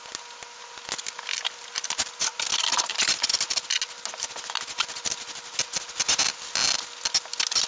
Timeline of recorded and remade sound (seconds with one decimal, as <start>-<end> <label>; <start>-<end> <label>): 0.0-7.7 recorded